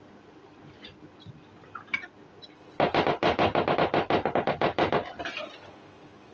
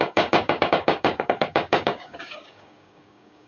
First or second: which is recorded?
first